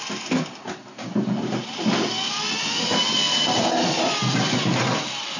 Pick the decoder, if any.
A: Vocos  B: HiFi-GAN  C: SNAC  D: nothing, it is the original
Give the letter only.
D